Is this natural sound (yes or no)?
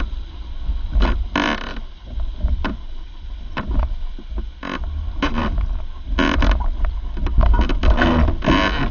yes